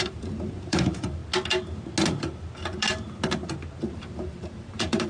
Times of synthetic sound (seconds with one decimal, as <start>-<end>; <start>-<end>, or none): 0.0-1.2; 3.9-5.1